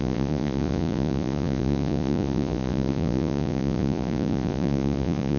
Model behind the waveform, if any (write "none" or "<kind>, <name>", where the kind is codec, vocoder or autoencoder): vocoder, Vocos